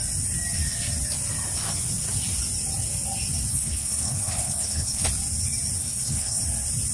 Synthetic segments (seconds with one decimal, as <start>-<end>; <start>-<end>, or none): 3.5-5.1; 5.8-6.4